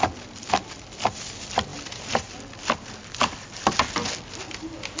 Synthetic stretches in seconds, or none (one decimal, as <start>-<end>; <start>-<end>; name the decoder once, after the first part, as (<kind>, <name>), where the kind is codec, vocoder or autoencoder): none

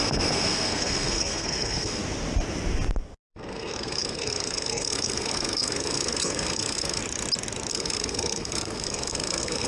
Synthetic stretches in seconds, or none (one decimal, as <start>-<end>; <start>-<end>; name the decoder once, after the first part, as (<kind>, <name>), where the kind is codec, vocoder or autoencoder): 0.0-2.0 (codec, SNAC); 3.3-7.0; 7.7-9.7

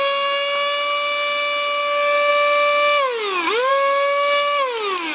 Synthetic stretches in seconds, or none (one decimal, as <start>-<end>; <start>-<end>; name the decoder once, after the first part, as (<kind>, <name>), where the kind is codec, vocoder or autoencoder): none

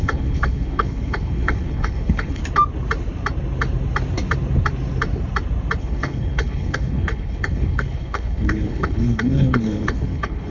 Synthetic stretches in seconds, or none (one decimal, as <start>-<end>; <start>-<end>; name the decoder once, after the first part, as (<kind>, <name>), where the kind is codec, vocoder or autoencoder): 0.0-2.4 (codec, HILCodec); 5.8-10.5

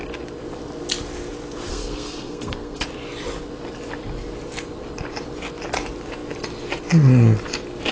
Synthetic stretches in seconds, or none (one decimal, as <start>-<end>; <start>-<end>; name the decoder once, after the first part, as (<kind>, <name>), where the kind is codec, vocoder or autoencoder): 1.7-2.8 (codec, SNAC)

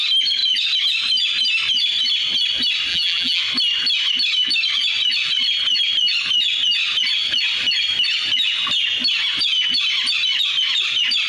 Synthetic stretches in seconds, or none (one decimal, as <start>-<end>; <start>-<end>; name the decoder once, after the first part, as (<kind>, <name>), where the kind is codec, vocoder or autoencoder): 2.9-3.4 (vocoder, BigVGAN v2)